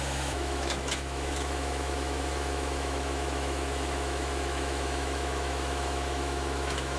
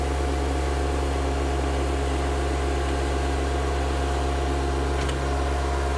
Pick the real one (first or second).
second